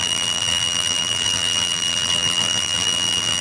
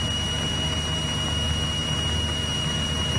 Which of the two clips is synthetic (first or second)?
first